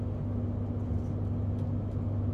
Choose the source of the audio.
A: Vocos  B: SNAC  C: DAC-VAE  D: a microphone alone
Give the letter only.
D